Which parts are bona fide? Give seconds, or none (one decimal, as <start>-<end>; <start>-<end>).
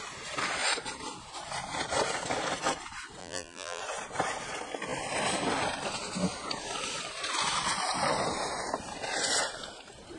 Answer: 0.0-3.2; 3.8-10.2